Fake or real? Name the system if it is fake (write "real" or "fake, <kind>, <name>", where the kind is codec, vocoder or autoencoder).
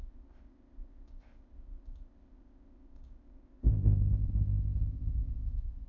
fake, codec, ZipCodec